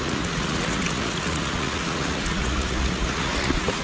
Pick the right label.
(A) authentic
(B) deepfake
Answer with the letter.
B